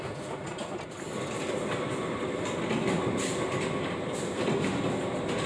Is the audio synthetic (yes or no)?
no